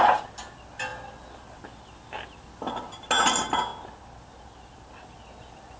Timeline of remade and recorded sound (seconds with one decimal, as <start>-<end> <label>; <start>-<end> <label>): 0.0-5.8 recorded